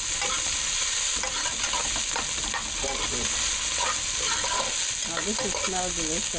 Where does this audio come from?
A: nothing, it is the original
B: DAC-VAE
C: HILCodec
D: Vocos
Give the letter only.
A